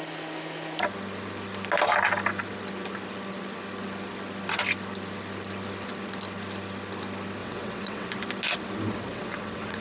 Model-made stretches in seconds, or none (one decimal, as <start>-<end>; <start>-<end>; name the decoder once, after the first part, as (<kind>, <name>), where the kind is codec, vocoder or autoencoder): 7.4-8.1 (vocoder, WaveNeXt); 9.1-9.8